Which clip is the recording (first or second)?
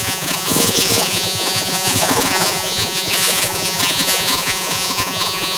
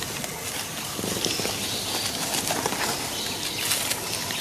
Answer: second